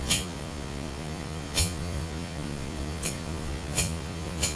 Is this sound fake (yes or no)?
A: yes